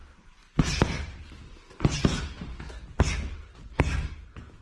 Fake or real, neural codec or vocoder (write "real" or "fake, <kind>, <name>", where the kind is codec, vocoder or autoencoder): real